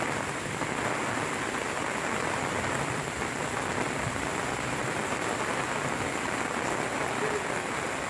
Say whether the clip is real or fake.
real